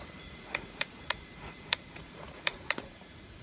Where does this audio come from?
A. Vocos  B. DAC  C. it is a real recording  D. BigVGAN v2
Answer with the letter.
A